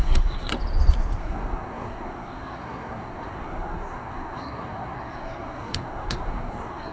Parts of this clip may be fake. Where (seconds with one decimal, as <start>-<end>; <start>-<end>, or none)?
0.0-0.5; 1.2-6.9